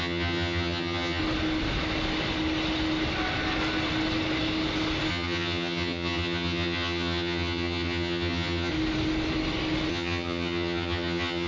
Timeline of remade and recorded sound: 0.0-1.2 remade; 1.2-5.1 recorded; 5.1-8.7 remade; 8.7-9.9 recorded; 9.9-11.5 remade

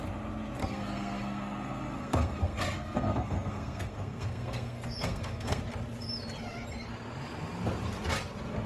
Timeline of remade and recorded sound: 0.0-0.6 recorded; 0.6-5.6 remade; 5.6-8.7 recorded

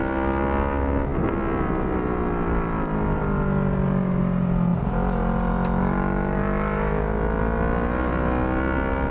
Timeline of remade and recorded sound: 0.0-9.1 recorded

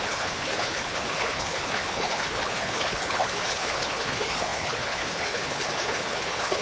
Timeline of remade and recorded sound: 0.0-6.6 remade

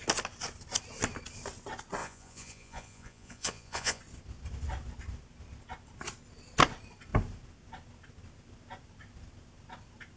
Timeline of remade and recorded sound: 0.0-2.0 recorded; 2.0-4.0 remade; 4.0-10.2 recorded

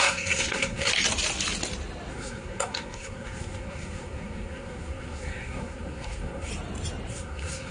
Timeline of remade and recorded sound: 0.0-0.9 remade; 0.9-2.1 recorded; 2.1-6.5 remade; 6.5-7.1 recorded; 7.1-7.7 remade

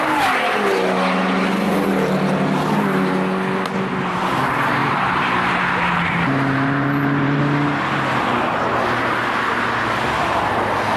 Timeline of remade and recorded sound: 0.0-4.8 recorded; 4.8-7.4 remade; 7.4-11.0 recorded